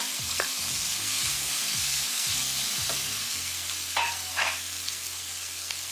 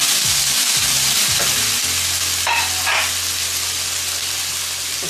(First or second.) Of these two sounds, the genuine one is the second